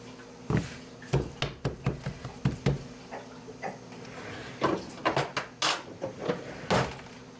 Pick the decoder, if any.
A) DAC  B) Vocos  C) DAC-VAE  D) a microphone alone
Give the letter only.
D